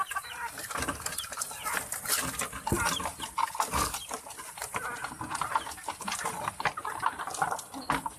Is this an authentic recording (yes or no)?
yes